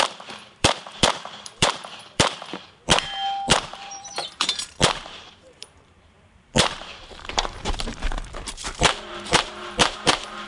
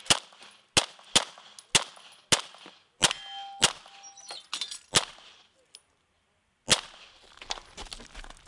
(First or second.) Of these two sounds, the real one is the second